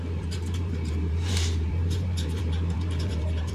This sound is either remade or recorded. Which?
remade